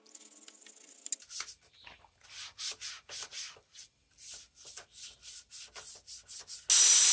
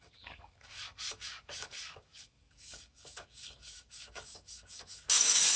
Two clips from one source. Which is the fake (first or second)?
second